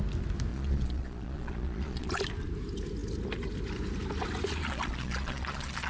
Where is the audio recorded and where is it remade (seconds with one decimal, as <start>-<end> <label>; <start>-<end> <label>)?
0.0-0.5 recorded; 0.5-2.2 remade; 2.2-4.6 recorded; 4.6-5.9 remade